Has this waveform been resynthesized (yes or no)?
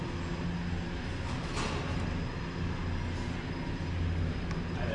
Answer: no